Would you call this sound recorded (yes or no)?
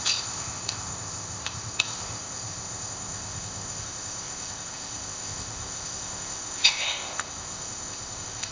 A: no